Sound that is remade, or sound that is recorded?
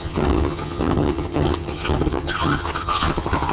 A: remade